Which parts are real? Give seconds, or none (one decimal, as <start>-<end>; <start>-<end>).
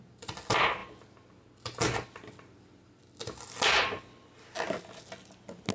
0.0-5.7